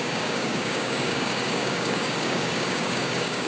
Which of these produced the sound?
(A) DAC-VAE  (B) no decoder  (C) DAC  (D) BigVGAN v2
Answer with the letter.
C